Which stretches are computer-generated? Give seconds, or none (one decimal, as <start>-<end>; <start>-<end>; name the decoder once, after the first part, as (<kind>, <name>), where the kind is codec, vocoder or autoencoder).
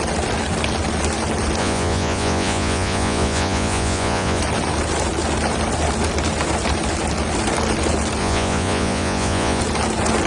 1.6-4.4 (vocoder, Vocos); 8.2-9.6